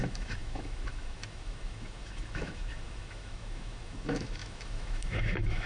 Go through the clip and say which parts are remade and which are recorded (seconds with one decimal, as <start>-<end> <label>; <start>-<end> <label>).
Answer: 0.0-5.7 remade